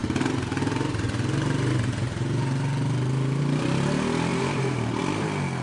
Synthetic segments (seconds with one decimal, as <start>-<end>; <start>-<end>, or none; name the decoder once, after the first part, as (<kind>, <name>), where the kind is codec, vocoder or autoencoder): 4.3-5.0 (vocoder, BigVGAN v2)